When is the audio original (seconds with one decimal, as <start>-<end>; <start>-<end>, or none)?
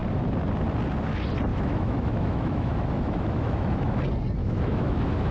0.0-1.5; 4.0-4.4